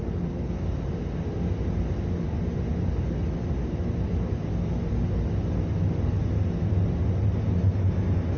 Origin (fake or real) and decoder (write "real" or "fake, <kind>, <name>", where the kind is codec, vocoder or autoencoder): real